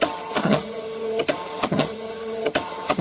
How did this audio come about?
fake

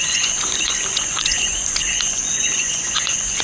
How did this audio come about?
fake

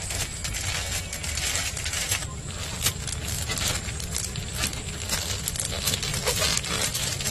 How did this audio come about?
real